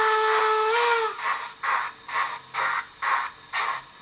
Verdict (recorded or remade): recorded